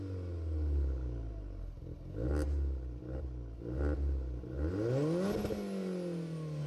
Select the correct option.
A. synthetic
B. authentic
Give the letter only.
B